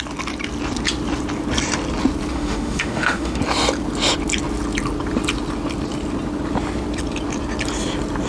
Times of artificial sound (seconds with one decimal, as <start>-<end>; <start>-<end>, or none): 2.3-3.4